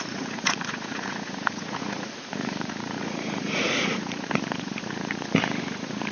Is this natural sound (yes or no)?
no